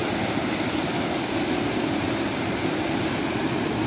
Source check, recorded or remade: recorded